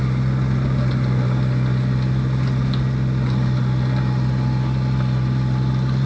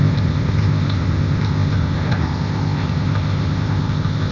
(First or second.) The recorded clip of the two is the first